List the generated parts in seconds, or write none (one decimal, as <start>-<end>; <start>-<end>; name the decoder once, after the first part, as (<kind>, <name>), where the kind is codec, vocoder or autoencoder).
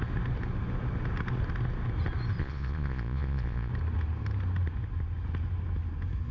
2.4-3.7 (vocoder, Vocos)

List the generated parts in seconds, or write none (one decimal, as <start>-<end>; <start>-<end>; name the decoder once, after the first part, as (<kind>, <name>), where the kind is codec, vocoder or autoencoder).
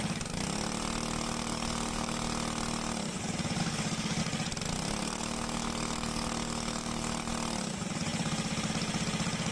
1.4-2.2 (codec, DAC); 3.6-4.2; 5.0-7.3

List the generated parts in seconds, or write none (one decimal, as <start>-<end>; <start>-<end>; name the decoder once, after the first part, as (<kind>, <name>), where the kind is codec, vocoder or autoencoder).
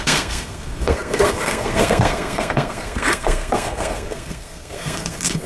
0.0-5.5 (codec, SNAC)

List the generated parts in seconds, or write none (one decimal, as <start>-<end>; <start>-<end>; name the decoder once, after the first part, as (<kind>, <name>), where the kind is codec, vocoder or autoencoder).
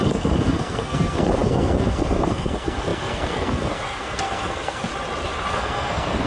0.0-4.9 (codec, SNAC); 5.5-6.3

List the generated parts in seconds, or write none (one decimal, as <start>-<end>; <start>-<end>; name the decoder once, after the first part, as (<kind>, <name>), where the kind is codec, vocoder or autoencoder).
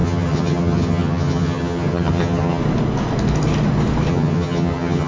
0.0-2.6 (vocoder, HiFi-GAN); 4.1-5.1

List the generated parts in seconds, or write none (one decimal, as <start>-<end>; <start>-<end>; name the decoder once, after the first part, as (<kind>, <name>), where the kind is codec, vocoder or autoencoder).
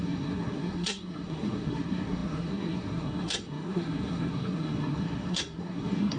0.0-6.2 (codec, SNAC)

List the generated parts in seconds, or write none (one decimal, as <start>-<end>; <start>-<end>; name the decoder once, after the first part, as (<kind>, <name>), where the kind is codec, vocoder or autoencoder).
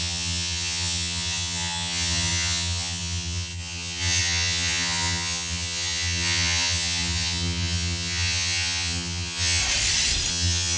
0.0-9.6 (vocoder, HiFi-GAN); 10.3-10.8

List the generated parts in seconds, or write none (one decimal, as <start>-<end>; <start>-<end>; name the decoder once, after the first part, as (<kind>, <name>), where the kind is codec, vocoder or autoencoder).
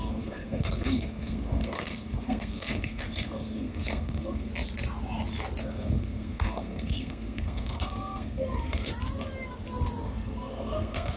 0.0-4.5 (codec, SNAC); 5.6-8.9; 10.0-11.2